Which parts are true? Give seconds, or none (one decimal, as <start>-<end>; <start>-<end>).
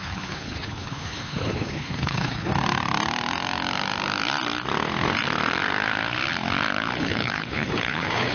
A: 2.5-7.0